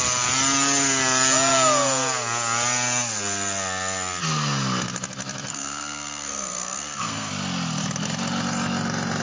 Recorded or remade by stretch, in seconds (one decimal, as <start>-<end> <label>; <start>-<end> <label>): 0.0-5.5 recorded; 5.5-7.3 remade; 7.3-9.2 recorded